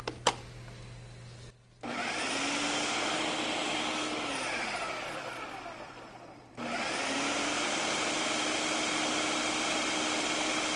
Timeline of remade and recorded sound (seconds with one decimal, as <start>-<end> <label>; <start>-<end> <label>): 0.0-3.6 recorded; 3.6-8.2 remade; 8.2-10.8 recorded